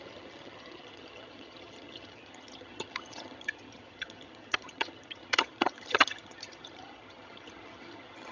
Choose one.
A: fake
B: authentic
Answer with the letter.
A